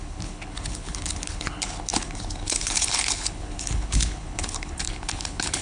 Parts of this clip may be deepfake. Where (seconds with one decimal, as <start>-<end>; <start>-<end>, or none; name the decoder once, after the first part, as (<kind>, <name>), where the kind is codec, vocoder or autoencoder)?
0.0-5.6 (codec, HILCodec)